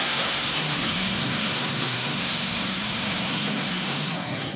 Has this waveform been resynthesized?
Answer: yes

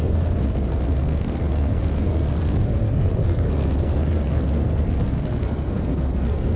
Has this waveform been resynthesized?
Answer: yes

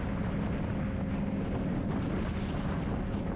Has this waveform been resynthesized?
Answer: no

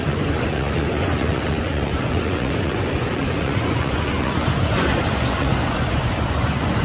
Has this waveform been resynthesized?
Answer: yes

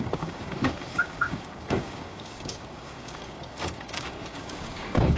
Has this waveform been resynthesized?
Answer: yes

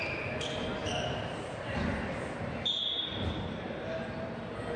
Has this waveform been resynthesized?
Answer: yes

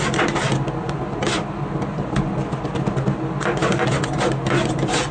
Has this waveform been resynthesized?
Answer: no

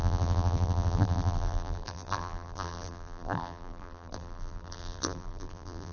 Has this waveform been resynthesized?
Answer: yes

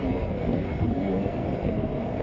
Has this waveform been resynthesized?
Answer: yes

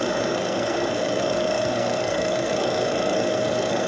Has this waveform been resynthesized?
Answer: yes